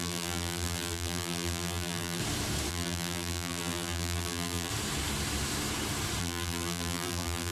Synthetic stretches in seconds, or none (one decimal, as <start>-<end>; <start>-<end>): 0.0-2.2; 2.7-4.7; 6.2-7.5

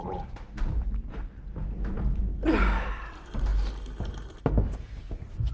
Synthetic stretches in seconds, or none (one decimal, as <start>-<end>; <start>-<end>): 0.0-2.3; 3.1-3.5; 5.0-5.5